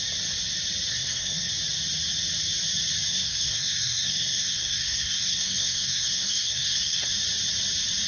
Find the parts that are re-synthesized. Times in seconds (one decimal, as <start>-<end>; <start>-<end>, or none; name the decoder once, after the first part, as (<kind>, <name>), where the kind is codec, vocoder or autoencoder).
0.9-1.5 (codec, SNAC); 3.1-7.1